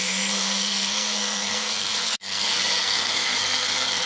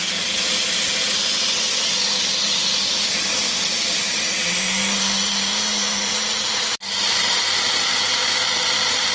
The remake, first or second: first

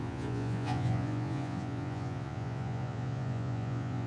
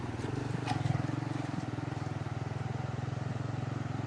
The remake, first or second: first